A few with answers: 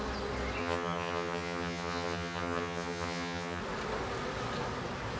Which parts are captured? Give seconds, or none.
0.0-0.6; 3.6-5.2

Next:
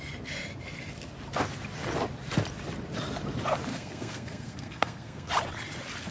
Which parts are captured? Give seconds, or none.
0.0-3.7; 5.3-6.1

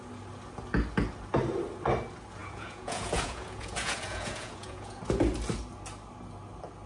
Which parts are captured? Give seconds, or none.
0.0-2.4; 5.0-6.9

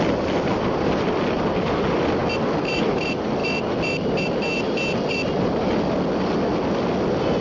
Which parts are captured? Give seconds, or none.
0.0-7.4